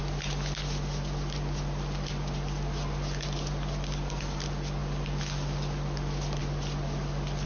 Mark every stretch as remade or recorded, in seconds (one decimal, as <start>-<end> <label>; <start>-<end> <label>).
0.0-7.5 recorded